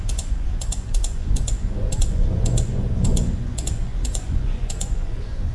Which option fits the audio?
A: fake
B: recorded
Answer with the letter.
A